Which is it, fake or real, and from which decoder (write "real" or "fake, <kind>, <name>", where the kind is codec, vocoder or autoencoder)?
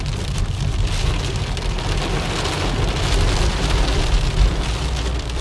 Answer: real